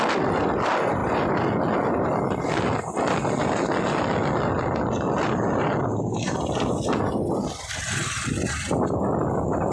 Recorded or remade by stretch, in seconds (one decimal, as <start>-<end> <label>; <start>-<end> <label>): 0.0-9.7 recorded